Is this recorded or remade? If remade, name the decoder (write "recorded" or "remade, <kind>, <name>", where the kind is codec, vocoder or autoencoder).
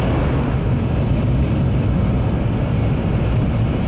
recorded